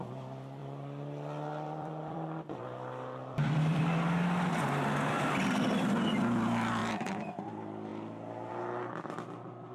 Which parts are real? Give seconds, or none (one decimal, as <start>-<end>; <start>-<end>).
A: 0.0-0.6; 3.8-9.7